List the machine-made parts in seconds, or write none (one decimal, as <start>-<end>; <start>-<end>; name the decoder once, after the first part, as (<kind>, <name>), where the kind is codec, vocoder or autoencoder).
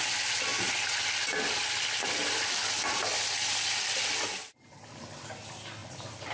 none